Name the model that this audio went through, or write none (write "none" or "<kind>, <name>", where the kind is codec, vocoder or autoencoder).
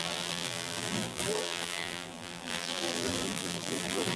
vocoder, BigVGAN v2